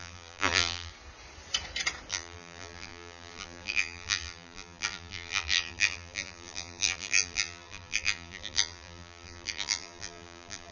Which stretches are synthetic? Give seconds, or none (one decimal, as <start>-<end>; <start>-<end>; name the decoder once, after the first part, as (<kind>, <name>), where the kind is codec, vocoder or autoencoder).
0.0-0.9 (vocoder, BigVGAN v2); 2.1-10.7

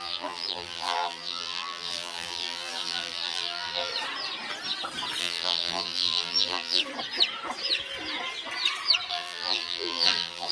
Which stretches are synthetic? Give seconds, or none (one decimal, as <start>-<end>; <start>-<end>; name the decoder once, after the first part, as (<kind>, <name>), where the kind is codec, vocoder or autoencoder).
0.0-3.9 (vocoder, BigVGAN v2); 5.2-6.8; 9.1-10.5

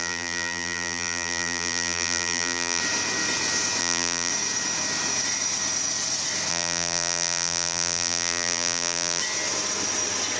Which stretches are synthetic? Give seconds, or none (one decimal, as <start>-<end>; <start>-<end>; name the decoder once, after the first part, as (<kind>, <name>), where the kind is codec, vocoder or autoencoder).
0.0-2.8 (vocoder, BigVGAN v2); 3.8-4.3; 6.5-9.2

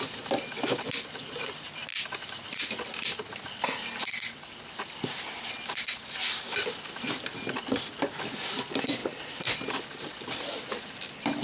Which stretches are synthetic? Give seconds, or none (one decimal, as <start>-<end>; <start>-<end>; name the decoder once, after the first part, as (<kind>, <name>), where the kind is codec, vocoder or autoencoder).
none

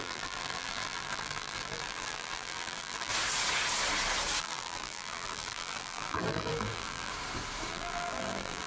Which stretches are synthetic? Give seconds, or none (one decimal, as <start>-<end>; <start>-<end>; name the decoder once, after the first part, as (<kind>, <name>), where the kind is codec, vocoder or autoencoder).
0.0-3.1 (vocoder, BigVGAN v2); 4.4-7.1; 7.7-8.7

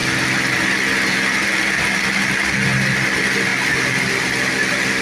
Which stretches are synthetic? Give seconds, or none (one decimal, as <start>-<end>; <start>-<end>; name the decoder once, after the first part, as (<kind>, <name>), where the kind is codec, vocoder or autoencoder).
none

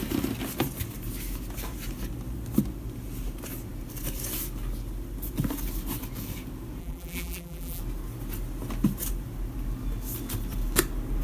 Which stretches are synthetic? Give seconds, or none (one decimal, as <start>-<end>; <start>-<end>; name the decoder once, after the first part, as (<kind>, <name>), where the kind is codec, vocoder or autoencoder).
6.8-7.8 (vocoder, BigVGAN v2)

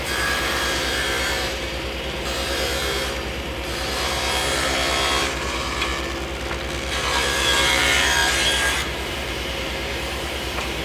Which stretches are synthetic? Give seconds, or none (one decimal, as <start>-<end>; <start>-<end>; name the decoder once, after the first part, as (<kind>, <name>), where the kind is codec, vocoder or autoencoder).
0.0-5.9 (vocoder, BigVGAN v2); 6.9-10.8